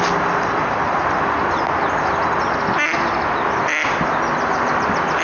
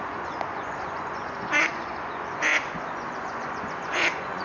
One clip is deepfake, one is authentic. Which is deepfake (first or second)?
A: second